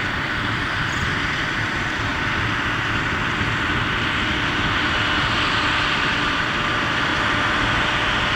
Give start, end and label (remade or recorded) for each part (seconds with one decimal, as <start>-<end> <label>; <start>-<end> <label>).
0.0-2.1 remade; 2.1-6.0 recorded; 6.0-7.1 remade; 7.1-8.4 recorded